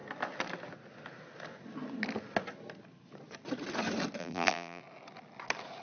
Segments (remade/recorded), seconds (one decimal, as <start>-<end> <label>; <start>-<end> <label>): 0.0-4.2 recorded; 4.2-4.8 remade; 4.8-5.8 recorded